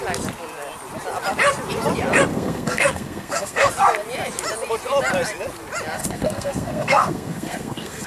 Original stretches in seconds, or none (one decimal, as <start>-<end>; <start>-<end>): 0.0-2.3; 3.7-6.0